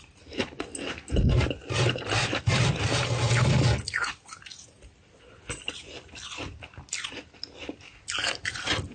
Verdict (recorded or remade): recorded